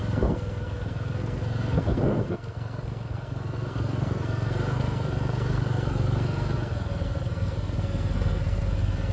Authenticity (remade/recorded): remade